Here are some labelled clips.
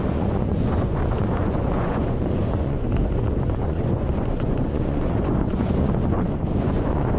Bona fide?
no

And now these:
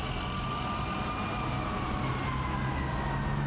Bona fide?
yes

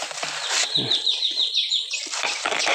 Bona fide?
yes